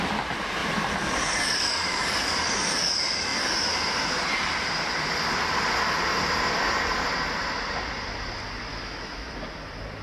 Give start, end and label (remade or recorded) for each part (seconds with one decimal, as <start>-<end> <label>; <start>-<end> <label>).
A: 0.0-8.7 recorded; 8.7-9.3 remade; 9.3-10.0 recorded